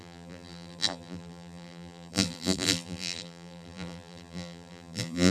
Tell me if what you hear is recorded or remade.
remade